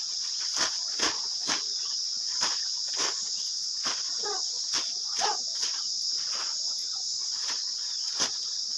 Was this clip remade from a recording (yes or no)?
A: no